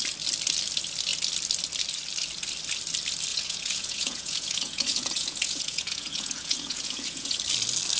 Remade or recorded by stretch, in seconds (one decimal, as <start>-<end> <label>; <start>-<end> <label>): 0.0-3.3 recorded; 3.3-7.4 remade; 7.4-8.0 recorded